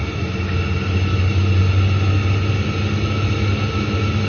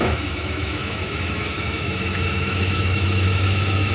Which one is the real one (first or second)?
first